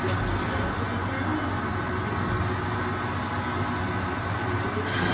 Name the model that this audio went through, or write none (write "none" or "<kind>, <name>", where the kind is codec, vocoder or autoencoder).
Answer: none